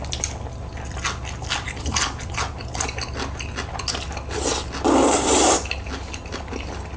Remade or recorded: recorded